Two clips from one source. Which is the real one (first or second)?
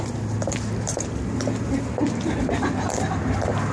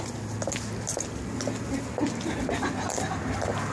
second